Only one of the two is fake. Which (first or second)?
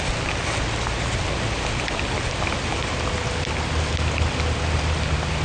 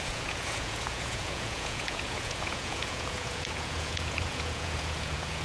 second